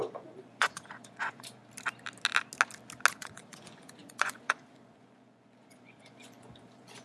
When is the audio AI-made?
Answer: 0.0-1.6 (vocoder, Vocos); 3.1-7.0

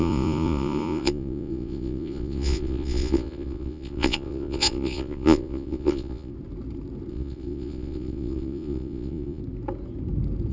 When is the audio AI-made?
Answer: 0.0-6.3 (vocoder, Vocos); 7.1-9.4

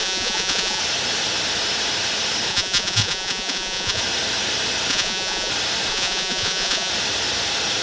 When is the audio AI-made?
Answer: 0.0-0.8 (vocoder, Vocos); 2.5-4.0; 4.9-5.5; 5.9-6.9

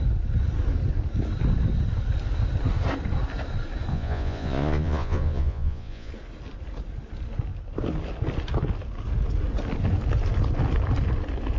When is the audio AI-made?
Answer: 3.9-6.1 (vocoder, Vocos)

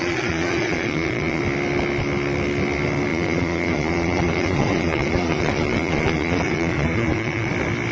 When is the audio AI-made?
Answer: 0.0-1.4 (vocoder, Vocos); 3.1-7.5